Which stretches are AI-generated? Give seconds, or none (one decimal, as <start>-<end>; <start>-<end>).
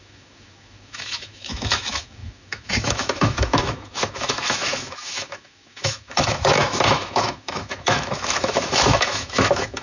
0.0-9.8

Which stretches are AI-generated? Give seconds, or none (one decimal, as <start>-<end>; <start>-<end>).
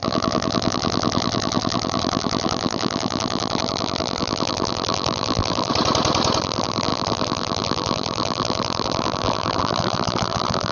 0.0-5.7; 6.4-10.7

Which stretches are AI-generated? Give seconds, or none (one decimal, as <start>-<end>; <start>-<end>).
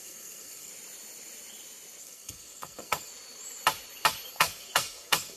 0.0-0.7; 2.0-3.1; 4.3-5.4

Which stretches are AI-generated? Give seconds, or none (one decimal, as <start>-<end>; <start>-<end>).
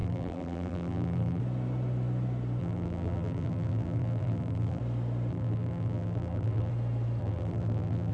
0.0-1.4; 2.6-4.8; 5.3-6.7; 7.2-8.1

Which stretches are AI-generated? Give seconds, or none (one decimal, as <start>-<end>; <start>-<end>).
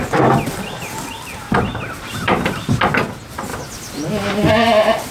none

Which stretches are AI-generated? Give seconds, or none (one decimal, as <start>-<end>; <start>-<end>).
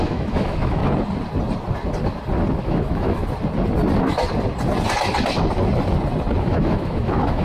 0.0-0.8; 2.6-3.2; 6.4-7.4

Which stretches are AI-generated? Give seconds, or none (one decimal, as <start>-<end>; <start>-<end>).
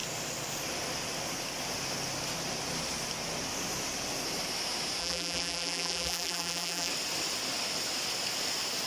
5.0-6.9